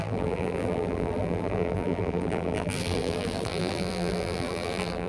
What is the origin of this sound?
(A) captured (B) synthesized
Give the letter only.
B